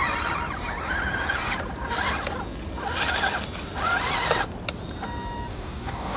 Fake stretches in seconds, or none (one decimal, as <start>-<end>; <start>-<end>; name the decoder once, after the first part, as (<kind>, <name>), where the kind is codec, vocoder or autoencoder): 5.5-6.2 (codec, DAC)